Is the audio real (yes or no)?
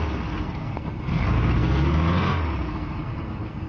no